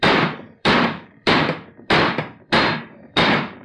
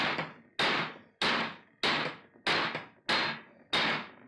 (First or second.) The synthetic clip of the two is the first